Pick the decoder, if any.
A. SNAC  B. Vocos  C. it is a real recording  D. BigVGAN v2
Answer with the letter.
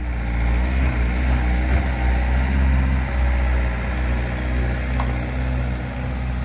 C